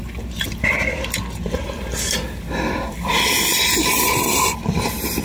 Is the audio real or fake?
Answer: fake